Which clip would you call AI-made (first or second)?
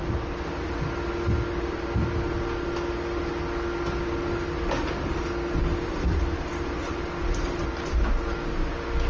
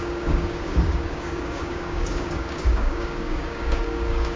second